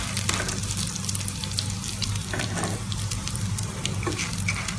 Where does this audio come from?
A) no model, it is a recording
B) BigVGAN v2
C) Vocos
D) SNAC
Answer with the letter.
A